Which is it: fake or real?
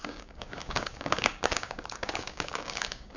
fake